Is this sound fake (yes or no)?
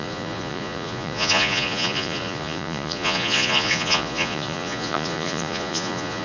yes